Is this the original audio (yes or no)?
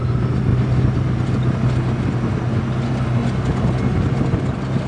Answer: yes